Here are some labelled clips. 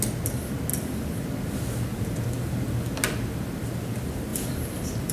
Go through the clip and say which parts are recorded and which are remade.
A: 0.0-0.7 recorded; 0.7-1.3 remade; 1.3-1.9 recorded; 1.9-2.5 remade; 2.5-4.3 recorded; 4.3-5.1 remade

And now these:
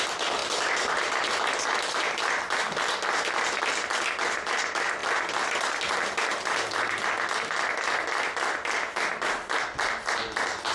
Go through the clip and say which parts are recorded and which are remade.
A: 0.0-10.7 recorded

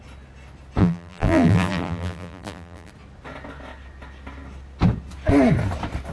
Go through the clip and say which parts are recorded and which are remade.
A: 0.0-0.8 recorded; 0.8-2.9 remade; 2.9-6.1 recorded

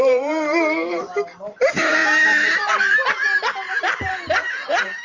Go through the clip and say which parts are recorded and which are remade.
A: 0.0-2.0 remade; 2.0-2.8 recorded; 2.8-5.0 remade